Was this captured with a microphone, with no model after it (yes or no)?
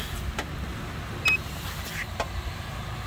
yes